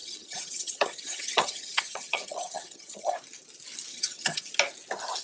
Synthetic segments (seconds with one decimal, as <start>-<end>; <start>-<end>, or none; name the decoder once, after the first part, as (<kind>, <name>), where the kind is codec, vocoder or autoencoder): 0.0-3.1 (vocoder, HiFi-GAN); 3.9-4.5